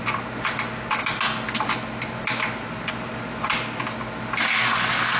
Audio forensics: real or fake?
real